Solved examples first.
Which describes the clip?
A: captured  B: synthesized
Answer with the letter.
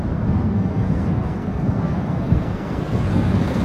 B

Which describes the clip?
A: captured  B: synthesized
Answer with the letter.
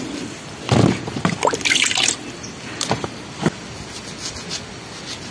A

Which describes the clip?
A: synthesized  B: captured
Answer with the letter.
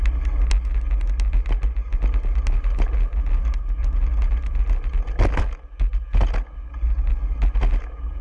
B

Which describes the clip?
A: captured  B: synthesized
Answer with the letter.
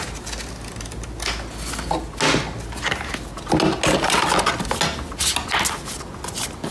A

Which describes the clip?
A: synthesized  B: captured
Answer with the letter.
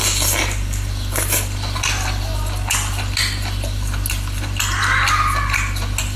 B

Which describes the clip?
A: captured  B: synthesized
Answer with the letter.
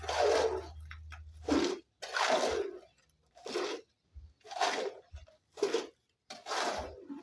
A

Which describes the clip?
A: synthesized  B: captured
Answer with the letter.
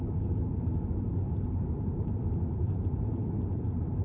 A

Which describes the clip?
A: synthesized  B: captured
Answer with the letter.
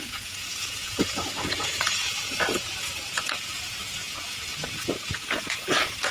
A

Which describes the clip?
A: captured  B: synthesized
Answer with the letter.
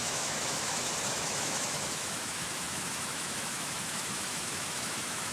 B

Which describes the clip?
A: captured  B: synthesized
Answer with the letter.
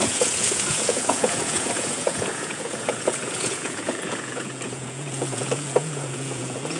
B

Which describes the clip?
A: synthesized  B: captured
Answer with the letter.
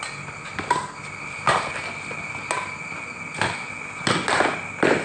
B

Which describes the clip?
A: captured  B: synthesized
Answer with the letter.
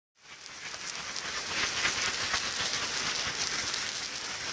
A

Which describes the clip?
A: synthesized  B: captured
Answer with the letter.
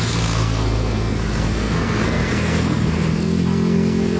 A